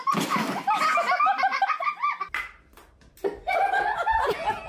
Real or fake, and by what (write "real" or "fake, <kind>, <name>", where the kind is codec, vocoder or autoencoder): real